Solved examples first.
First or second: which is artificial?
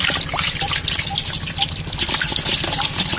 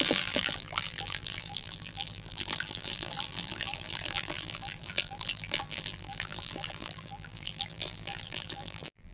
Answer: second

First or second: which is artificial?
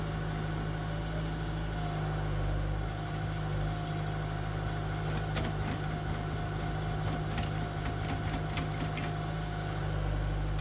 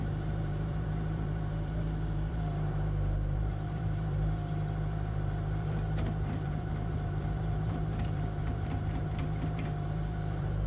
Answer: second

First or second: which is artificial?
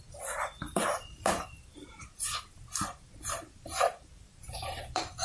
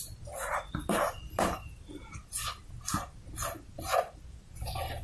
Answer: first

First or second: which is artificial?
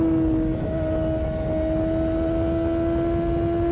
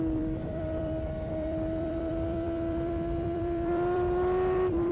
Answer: second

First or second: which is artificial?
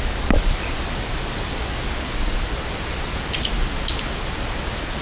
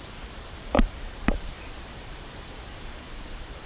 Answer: second